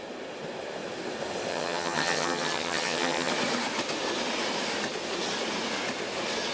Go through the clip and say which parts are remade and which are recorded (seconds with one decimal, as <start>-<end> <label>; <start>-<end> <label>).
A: 0.0-1.5 recorded; 1.5-3.3 remade; 3.3-6.5 recorded